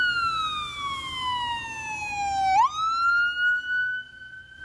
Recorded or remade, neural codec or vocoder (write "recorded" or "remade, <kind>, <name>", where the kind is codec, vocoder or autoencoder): recorded